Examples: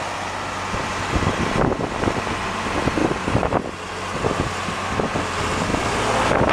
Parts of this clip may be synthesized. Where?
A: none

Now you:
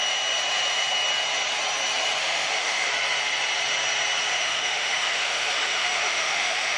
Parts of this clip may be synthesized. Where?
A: 2.2-2.9 (autoencoder, DAC-VAE); 4.3-6.8

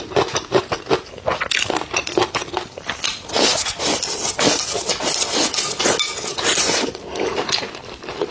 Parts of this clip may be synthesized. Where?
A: none

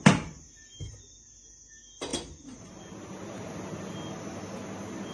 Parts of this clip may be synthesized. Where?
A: none

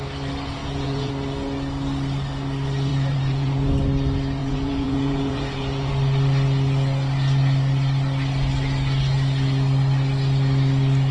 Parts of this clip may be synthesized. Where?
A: 0.6-1.1 (vocoder, Vocos); 2.9-3.7; 4.4-5.9

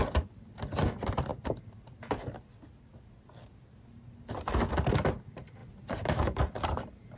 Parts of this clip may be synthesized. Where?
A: none